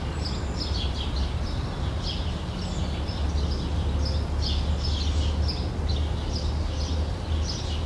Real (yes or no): yes